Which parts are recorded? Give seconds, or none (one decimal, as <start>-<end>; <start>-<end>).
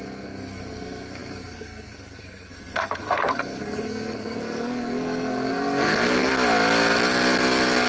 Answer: 6.3-7.9